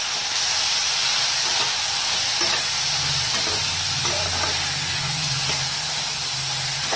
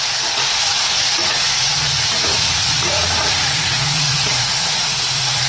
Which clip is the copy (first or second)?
second